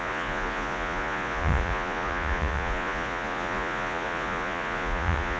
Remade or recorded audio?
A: remade